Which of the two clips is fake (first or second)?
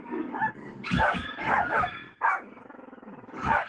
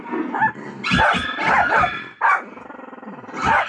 first